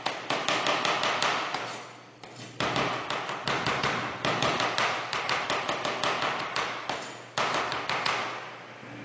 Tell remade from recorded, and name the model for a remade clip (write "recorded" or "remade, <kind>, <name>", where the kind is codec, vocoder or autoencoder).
recorded